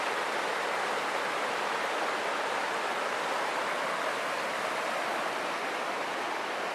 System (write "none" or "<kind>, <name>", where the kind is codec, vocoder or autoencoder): none